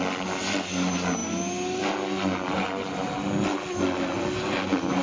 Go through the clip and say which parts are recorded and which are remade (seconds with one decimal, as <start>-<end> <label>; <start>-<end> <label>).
0.0-5.0 recorded

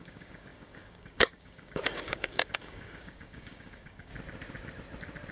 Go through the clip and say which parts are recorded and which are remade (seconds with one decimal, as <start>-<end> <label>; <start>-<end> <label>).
0.0-4.1 remade; 4.1-5.3 recorded

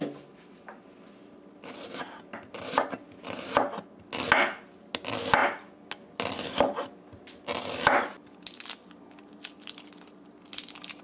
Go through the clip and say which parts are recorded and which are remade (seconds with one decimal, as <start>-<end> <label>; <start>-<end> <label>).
0.0-11.0 recorded

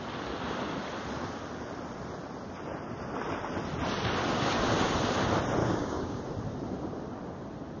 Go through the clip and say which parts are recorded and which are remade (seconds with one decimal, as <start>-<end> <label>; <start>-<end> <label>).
0.0-5.6 recorded; 5.6-6.2 remade; 6.2-7.8 recorded

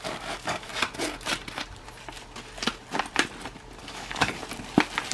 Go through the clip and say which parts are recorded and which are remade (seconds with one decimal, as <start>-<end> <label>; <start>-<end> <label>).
0.0-0.7 remade; 0.7-3.8 recorded; 3.8-4.4 remade; 4.4-5.1 recorded